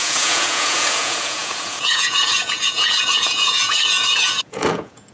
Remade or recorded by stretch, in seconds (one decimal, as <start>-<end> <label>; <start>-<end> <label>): 0.0-5.1 remade